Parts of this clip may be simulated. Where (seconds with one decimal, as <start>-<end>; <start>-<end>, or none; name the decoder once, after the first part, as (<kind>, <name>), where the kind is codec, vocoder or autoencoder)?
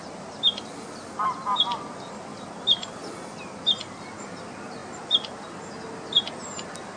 none